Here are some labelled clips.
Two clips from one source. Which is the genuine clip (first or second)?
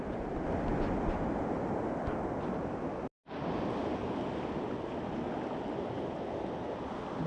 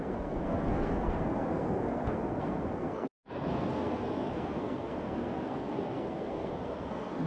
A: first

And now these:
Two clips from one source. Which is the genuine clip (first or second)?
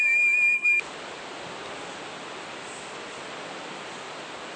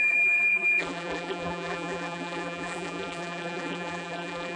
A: first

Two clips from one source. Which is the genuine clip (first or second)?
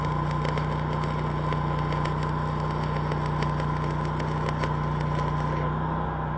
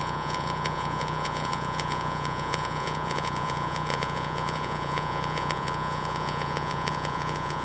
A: first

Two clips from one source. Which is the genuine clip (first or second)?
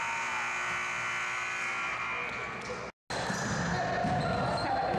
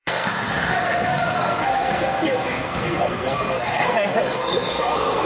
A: first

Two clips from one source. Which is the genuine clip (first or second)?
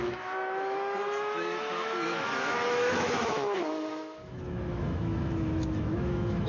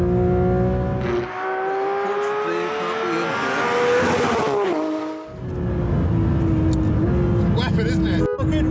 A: second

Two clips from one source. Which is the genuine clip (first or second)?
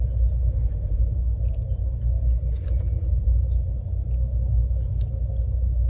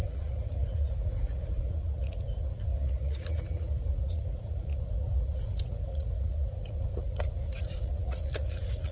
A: first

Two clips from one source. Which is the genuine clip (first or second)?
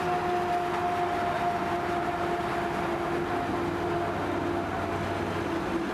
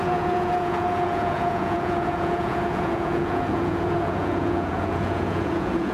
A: first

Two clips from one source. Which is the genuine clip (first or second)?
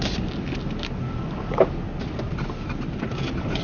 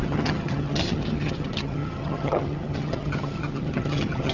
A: first